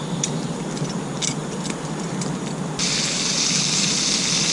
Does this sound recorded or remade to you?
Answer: recorded